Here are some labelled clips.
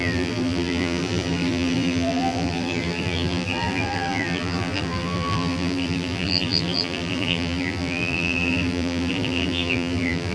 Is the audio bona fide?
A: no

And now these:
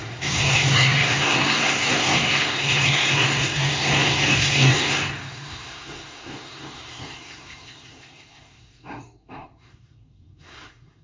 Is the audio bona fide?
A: no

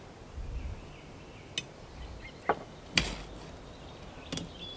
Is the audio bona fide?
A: yes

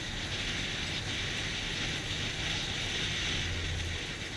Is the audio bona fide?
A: yes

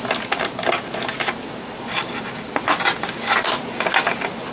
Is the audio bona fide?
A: yes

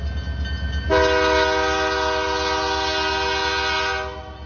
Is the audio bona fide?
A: yes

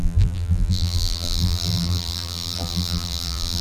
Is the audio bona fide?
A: no